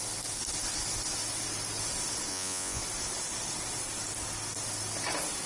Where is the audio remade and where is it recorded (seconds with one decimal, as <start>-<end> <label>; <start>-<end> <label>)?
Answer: 0.0-2.3 recorded; 2.3-2.8 remade; 2.8-5.5 recorded